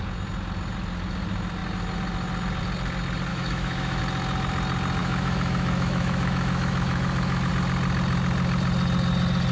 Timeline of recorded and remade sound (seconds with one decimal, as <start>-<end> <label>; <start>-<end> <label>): 0.0-3.3 recorded; 3.3-4.0 remade; 4.0-5.0 recorded; 5.0-7.5 remade; 7.5-9.5 recorded